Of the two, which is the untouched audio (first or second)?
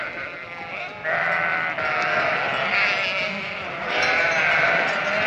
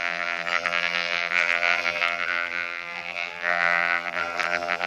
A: first